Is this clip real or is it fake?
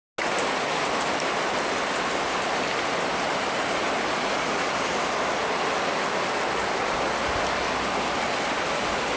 real